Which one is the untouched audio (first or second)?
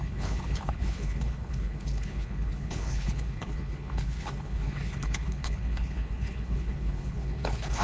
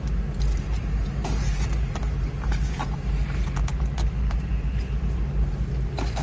second